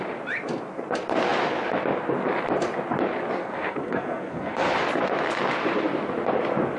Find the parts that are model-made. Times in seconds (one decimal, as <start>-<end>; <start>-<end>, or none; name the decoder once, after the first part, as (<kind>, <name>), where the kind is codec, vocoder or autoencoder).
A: 3.4-4.7 (codec, SNAC)